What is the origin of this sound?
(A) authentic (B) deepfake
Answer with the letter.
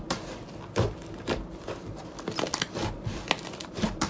B